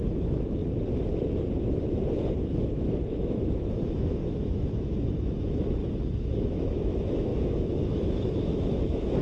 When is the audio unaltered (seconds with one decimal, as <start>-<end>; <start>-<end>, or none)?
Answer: 0.6-1.6; 5.8-6.4